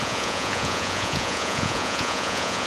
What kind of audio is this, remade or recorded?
remade